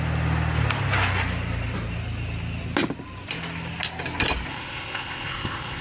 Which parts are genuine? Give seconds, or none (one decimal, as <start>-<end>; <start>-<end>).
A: 0.0-4.5